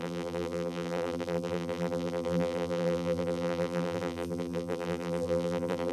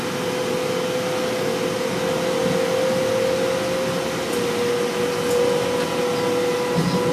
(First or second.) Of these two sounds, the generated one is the first